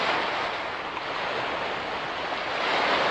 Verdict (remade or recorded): recorded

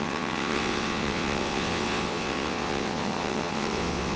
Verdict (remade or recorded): remade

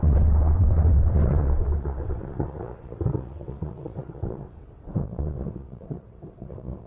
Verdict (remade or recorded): remade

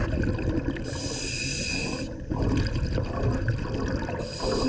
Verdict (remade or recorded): recorded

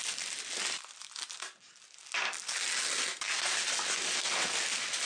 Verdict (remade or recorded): recorded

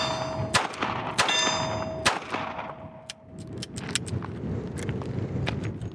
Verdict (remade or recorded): recorded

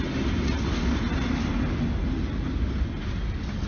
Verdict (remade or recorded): recorded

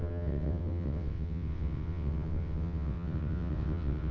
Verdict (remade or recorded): remade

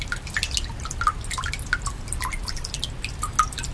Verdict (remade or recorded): recorded